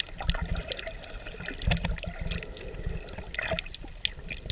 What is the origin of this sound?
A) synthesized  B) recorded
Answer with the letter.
B